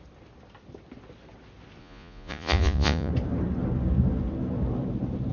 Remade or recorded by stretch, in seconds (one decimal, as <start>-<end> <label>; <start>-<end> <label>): 0.0-1.8 recorded; 1.8-3.1 remade; 3.1-5.3 recorded